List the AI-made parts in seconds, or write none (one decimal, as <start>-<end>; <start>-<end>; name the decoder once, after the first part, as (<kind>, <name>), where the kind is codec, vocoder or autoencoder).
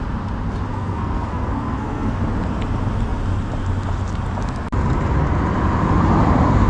0.7-2.2 (codec, SNAC)